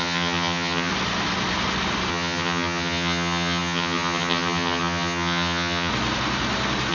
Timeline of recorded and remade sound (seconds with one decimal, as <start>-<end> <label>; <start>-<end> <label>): 0.0-0.9 remade; 0.9-2.1 recorded; 2.1-5.9 remade; 5.9-6.9 recorded